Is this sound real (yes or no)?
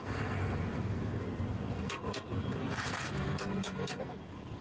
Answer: no